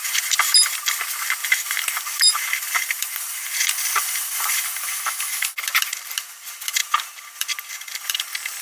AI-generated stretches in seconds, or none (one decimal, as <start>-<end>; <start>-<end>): 1.4-5.0; 6.8-8.2

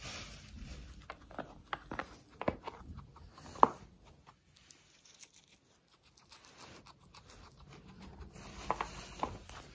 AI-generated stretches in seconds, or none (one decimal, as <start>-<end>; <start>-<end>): 2.3-3.3; 7.0-8.4

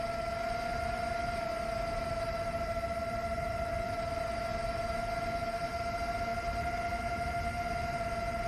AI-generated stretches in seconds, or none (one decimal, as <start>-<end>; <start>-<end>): 0.0-4.5; 5.7-6.3; 7.0-8.5

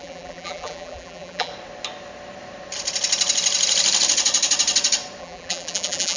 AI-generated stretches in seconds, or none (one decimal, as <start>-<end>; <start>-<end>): 0.0-1.5; 5.2-6.2

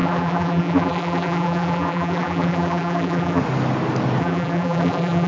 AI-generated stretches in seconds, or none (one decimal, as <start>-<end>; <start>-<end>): 0.0-3.4; 4.2-5.3

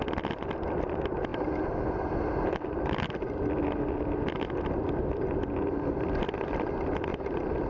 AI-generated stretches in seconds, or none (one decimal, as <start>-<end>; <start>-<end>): 7.1-7.7